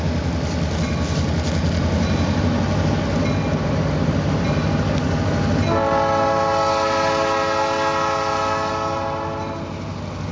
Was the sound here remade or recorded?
recorded